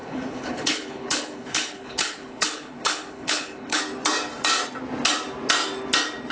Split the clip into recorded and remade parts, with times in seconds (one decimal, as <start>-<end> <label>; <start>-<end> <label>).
0.0-3.8 remade; 3.8-6.3 recorded